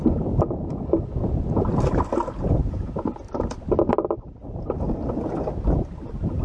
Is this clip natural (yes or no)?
yes